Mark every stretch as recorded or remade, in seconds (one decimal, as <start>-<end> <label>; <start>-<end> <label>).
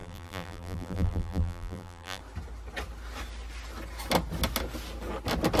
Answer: 0.0-2.2 remade; 2.2-5.6 recorded